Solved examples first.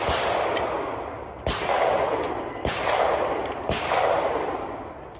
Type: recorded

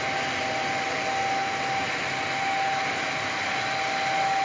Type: recorded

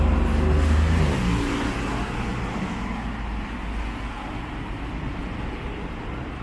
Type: recorded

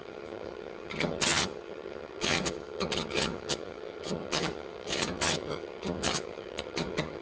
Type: remade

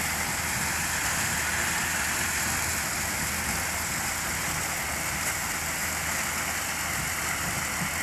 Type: recorded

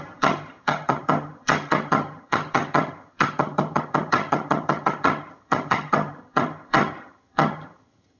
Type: remade